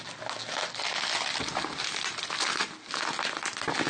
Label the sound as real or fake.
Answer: real